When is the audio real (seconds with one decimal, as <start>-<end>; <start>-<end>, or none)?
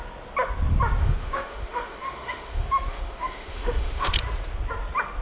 0.0-1.0; 4.1-5.2